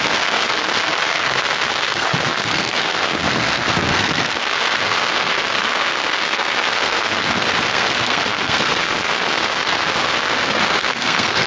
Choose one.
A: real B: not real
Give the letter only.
B